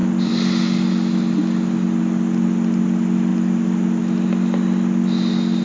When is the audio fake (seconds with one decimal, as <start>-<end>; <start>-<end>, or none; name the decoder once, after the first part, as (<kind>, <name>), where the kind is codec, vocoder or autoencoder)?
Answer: none